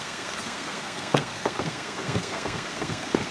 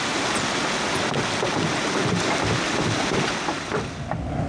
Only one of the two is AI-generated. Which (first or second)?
first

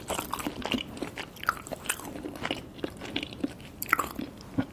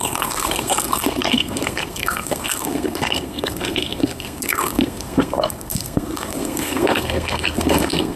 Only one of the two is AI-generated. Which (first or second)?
second